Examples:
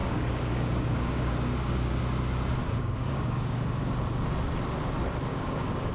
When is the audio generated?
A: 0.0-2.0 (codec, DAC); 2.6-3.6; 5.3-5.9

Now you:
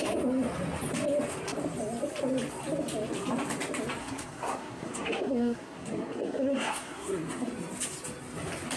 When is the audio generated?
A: 4.0-7.5 (codec, SNAC)

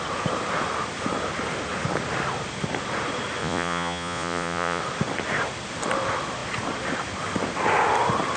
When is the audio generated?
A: 3.4-4.8 (vocoder, Vocos)